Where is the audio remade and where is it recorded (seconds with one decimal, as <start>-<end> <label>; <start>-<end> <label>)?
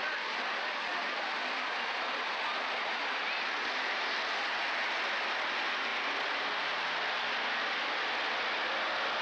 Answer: 0.0-9.2 recorded